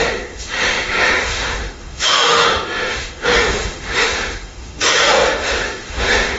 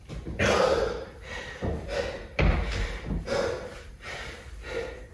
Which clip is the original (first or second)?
second